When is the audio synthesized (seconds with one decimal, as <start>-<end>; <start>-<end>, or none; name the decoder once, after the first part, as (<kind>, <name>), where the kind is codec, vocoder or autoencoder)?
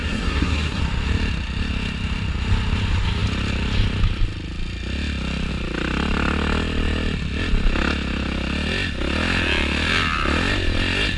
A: 0.0-0.8 (codec, SNAC)